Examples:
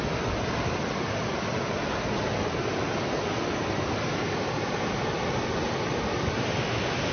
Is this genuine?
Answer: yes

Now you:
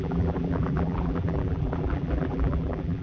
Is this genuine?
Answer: no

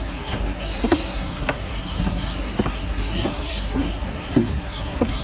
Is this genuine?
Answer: no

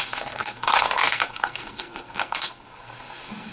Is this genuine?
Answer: no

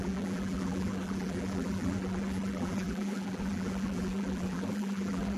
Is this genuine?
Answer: no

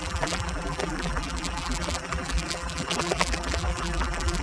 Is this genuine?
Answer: no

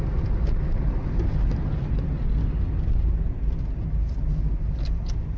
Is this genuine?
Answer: yes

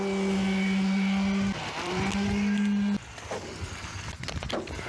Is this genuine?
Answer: yes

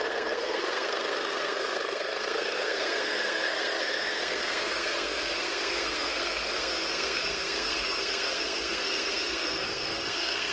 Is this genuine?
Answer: no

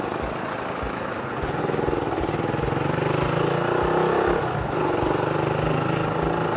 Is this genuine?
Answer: yes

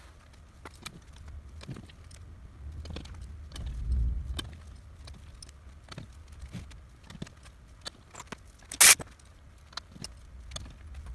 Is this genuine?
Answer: yes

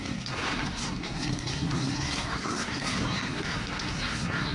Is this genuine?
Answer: no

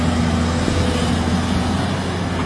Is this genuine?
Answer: yes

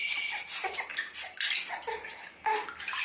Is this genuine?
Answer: yes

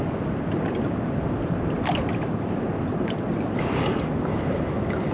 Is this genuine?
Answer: yes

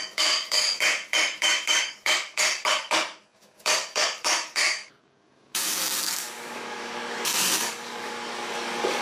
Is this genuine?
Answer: no